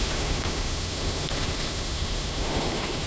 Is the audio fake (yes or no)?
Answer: yes